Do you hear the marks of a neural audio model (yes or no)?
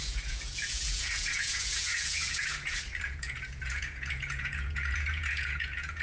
yes